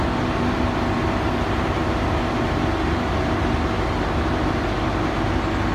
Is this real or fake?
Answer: real